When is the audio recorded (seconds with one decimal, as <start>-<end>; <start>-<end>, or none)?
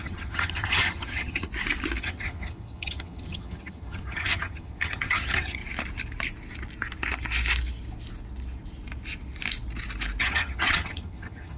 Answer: 1.5-2.0; 5.6-10.2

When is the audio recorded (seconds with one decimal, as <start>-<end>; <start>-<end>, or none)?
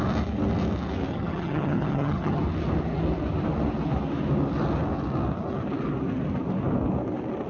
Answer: 0.0-1.1; 2.4-7.5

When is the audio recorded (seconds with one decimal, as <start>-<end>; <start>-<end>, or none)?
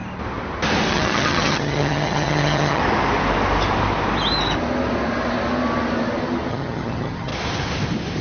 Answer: 0.0-0.9; 2.8-6.5; 7.3-8.2